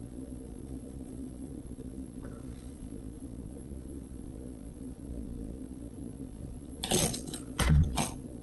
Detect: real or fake fake